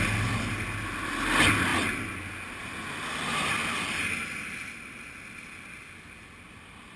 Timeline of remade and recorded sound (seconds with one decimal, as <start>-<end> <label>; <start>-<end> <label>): 0.0-7.0 recorded